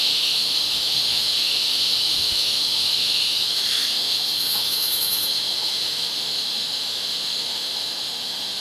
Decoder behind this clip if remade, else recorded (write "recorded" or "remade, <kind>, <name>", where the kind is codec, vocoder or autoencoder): remade, autoencoder, DAC-VAE